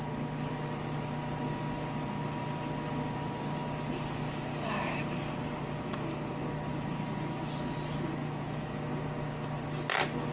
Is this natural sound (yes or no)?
yes